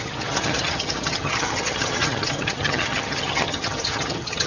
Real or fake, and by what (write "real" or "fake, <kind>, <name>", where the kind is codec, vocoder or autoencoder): fake, vocoder, HiFi-GAN